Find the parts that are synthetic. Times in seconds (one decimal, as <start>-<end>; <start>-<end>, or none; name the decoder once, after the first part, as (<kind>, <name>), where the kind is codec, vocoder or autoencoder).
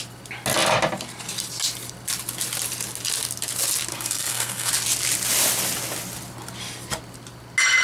3.9-4.7 (codec, SNAC)